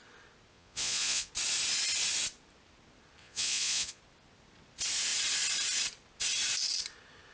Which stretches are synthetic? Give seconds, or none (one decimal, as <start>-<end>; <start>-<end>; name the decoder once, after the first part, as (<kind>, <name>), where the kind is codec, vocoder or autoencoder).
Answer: 0.5-1.3 (vocoder, Vocos); 3.2-4.0